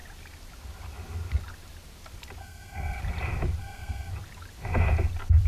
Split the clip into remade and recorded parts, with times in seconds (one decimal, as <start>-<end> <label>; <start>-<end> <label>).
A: 0.0-2.4 recorded; 2.4-3.0 remade; 3.0-3.6 recorded; 3.6-4.1 remade; 4.1-5.5 recorded